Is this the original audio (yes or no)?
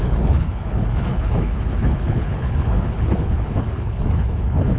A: no